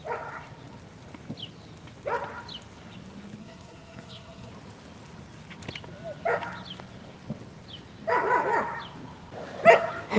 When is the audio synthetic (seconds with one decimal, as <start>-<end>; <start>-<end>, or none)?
3.4-4.5